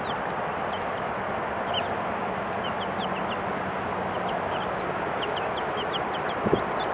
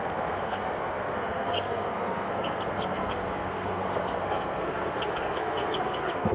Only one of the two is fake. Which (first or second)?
second